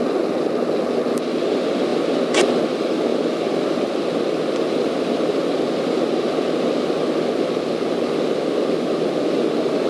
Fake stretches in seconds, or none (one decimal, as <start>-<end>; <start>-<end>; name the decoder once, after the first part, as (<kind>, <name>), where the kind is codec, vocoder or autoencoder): 3.1-6.1 (vocoder, BigVGAN v2)